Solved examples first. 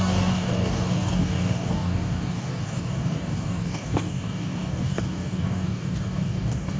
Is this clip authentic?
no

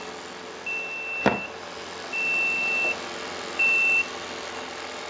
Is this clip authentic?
yes